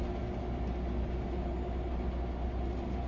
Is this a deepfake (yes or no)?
no